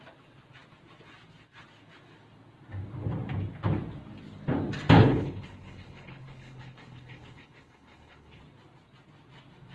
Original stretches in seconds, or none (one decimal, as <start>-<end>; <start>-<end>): 0.0-5.0; 8.4-9.7